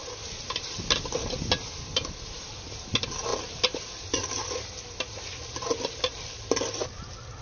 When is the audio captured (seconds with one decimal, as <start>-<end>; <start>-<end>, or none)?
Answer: 0.0-7.4